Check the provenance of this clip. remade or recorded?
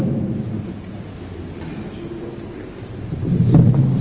recorded